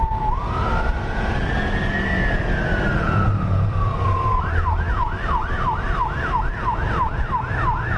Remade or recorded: recorded